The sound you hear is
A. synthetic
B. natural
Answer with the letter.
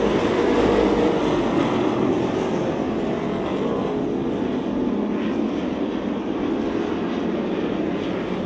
B